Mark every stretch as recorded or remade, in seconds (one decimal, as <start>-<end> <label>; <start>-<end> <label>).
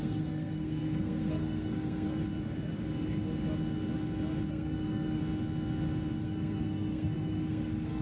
0.0-2.2 remade; 2.2-4.5 recorded; 4.5-5.2 remade; 5.2-6.2 recorded; 6.2-8.0 remade